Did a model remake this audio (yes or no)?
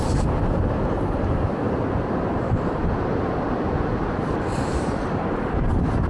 yes